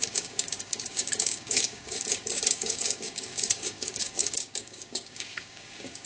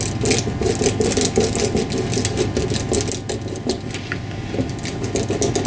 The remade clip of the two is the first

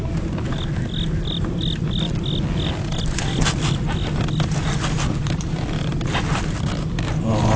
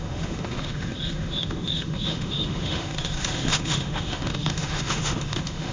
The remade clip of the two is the second